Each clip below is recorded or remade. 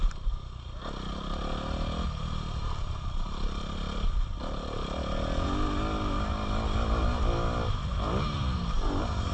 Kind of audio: recorded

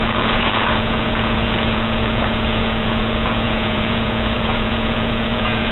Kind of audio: remade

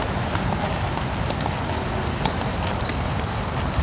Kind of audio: recorded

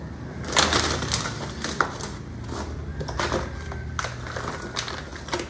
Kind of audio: recorded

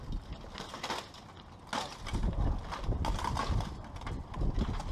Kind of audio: recorded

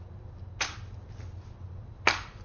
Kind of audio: recorded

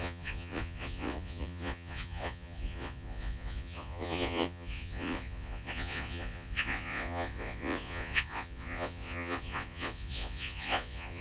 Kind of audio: remade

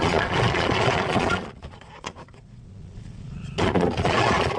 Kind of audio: remade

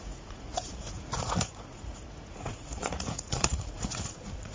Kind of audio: remade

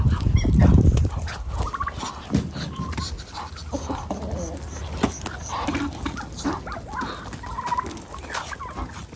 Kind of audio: recorded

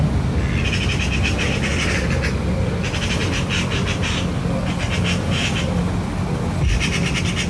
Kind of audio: recorded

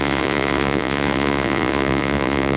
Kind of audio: remade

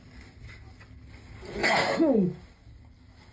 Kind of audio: recorded